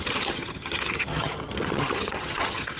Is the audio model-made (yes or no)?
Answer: yes